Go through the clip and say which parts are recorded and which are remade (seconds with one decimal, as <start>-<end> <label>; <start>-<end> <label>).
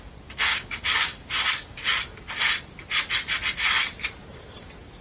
0.0-0.5 recorded; 0.5-1.2 remade; 1.2-5.0 recorded